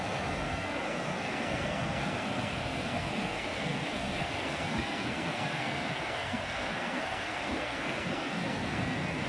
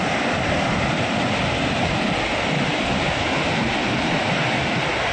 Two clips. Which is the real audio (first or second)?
second